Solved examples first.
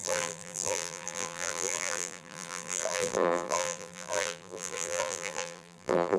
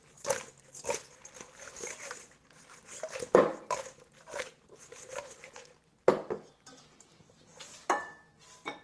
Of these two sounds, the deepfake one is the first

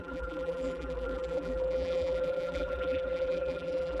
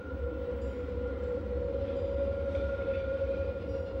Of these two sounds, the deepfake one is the first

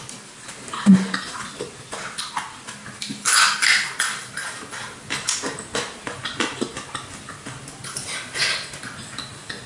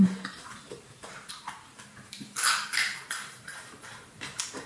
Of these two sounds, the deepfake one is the second